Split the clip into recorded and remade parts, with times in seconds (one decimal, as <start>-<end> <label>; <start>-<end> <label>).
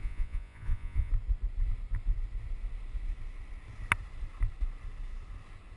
0.0-1.1 remade; 1.1-5.8 recorded